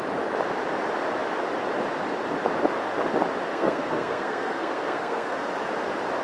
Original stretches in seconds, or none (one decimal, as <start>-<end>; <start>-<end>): 0.0-3.5; 5.5-6.2